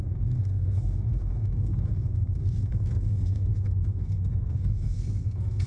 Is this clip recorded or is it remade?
remade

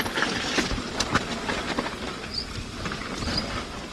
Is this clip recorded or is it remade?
recorded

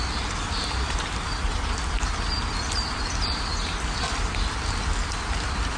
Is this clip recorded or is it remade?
recorded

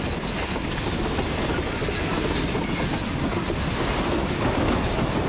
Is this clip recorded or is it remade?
recorded